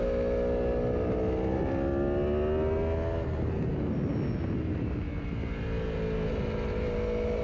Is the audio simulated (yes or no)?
no